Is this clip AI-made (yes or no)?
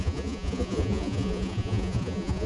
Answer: yes